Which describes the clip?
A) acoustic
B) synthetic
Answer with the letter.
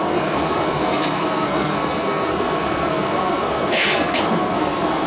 B